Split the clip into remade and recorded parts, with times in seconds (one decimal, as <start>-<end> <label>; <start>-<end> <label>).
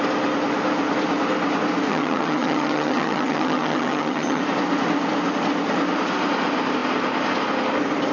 0.0-1.9 recorded; 1.9-4.4 remade; 4.4-8.1 recorded